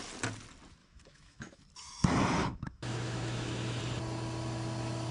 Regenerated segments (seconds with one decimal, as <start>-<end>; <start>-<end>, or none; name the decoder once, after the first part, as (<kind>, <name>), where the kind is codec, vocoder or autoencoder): 0.8-1.6 (autoencoder, DAC-VAE); 2.4-3.8